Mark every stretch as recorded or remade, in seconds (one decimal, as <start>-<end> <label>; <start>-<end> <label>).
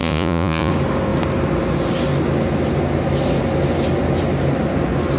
0.0-0.7 remade; 0.7-5.2 recorded